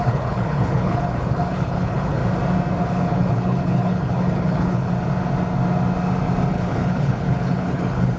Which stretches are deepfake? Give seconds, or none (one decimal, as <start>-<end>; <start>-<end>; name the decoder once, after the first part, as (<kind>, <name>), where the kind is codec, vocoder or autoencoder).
0.0-2.2 (codec, HILCodec); 2.8-4.9; 6.5-8.2